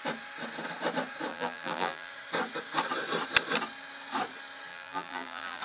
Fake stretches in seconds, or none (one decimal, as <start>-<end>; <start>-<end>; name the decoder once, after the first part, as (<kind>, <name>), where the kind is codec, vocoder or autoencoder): 1.3-2.1 (vocoder, BigVGAN v2); 4.7-5.6